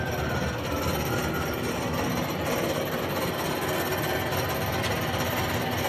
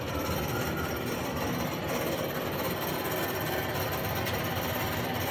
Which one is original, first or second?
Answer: first